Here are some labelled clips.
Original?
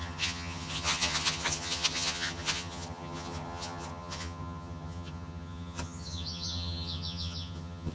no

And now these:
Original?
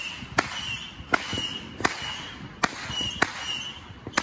yes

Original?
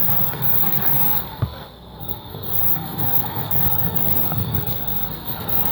no